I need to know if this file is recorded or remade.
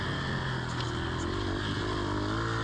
recorded